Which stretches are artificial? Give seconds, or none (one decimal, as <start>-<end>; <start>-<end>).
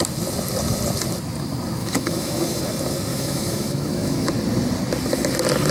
1.8-2.6; 3.1-4.3